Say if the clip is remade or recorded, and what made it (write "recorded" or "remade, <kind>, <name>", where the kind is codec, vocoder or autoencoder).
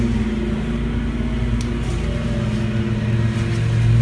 recorded